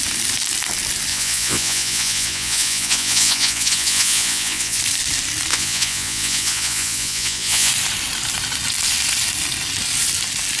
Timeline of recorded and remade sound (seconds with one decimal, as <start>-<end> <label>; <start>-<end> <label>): 0.0-1.1 recorded; 1.1-4.8 remade; 4.8-5.5 recorded; 5.5-7.7 remade; 7.7-10.6 recorded